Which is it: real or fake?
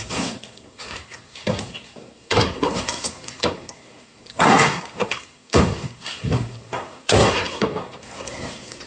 fake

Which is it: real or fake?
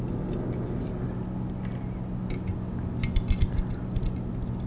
real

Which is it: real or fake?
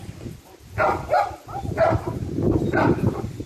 fake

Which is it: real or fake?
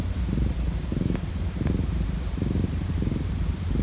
real